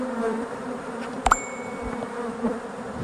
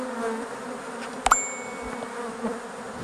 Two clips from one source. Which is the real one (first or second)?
second